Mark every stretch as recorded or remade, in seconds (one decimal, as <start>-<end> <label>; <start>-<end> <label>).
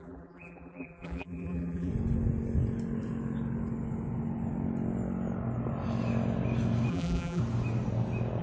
0.0-1.9 remade; 1.9-6.9 recorded; 6.9-7.4 remade; 7.4-8.4 recorded